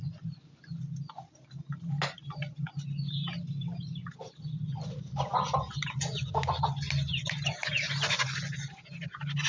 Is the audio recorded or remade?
recorded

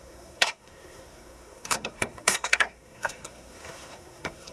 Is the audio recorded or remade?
remade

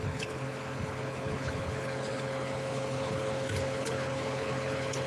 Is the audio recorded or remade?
remade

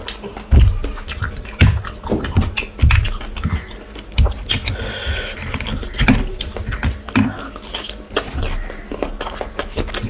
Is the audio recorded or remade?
recorded